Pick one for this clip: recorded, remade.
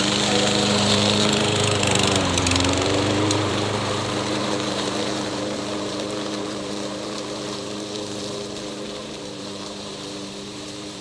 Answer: remade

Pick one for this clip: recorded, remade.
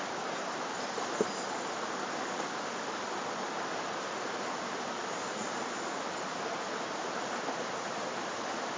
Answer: recorded